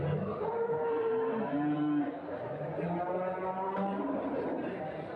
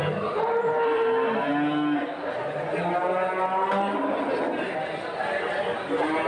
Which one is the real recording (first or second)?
second